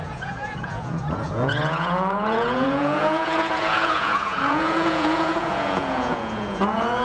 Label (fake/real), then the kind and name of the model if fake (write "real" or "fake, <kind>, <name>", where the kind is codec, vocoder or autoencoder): fake, vocoder, Vocos